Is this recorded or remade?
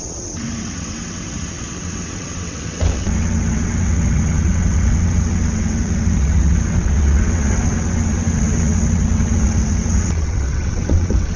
remade